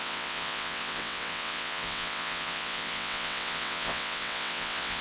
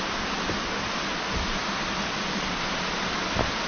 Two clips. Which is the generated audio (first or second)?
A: first